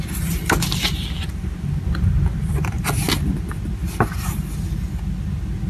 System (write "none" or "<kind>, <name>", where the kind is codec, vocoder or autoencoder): none